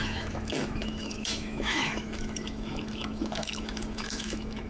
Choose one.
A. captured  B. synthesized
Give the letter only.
B